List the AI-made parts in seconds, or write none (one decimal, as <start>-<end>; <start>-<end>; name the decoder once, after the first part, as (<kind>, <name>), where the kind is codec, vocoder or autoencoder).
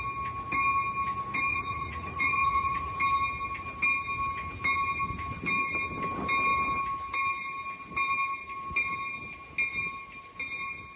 1.5-3.0 (vocoder, Vocos)